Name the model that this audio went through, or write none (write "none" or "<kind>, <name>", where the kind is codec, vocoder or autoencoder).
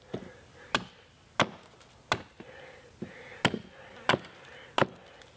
none